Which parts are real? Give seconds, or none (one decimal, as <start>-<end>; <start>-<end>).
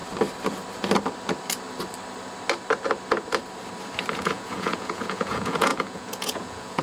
0.0-4.1